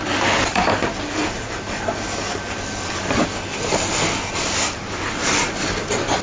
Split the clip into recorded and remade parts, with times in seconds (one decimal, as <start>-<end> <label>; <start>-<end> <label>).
0.0-0.5 recorded; 0.5-3.2 remade; 3.2-4.3 recorded; 4.3-5.4 remade; 5.4-6.2 recorded